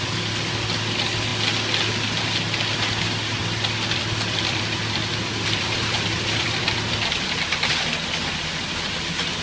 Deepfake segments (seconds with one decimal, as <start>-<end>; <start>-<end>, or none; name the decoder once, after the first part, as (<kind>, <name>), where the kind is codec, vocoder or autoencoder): 3.4-6.9 (vocoder, BigVGAN v2)

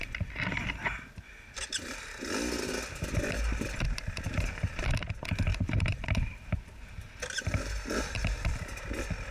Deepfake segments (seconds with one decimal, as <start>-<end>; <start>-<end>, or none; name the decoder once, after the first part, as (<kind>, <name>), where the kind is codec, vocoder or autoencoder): 5.5-8.8 (vocoder, BigVGAN v2)

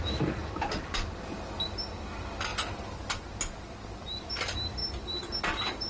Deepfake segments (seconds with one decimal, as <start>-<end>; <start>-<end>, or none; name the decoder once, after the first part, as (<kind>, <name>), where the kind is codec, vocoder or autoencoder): none

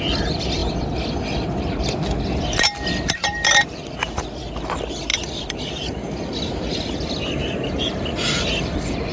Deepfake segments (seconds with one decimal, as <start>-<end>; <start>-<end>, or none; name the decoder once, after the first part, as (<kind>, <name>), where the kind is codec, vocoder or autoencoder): 0.6-4.2 (vocoder, BigVGAN v2); 5.1-7.8

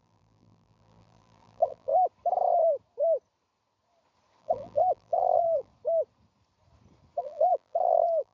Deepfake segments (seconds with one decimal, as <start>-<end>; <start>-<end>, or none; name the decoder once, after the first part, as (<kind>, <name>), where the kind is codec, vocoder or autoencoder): 0.0-1.9 (vocoder, BigVGAN v2); 4.4-5.7; 7.2-8.3